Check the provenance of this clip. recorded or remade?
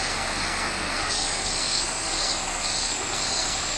remade